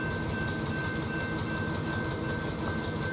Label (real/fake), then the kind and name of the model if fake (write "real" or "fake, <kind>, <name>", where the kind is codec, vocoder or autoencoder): real